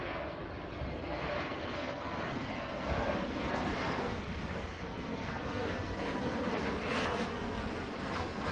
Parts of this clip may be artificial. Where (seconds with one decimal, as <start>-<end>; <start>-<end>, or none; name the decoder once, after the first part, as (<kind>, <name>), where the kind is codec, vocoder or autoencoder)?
0.0-0.4 (codec, SNAC); 0.9-8.5